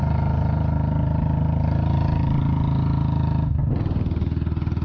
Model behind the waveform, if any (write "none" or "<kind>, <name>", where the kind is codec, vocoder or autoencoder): none